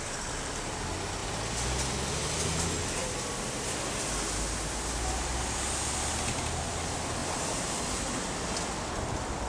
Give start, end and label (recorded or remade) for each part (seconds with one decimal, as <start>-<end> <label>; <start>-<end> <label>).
0.0-7.2 recorded; 7.2-8.2 remade; 8.2-9.5 recorded